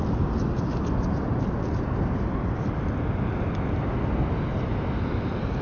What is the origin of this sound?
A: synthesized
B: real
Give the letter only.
B